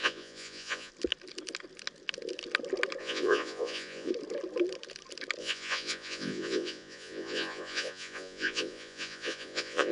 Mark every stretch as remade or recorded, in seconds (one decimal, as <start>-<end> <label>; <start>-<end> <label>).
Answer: 0.0-0.9 remade; 0.9-3.0 recorded; 3.0-4.1 remade; 4.1-5.4 recorded; 5.4-9.9 remade